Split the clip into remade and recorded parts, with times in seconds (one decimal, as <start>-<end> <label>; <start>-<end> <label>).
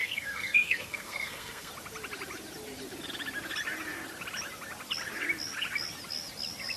0.0-1.7 remade; 1.7-6.8 recorded